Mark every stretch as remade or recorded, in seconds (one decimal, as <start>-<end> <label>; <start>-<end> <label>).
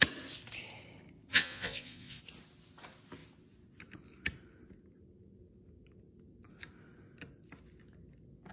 0.0-1.3 recorded; 1.3-2.2 remade; 2.2-8.5 recorded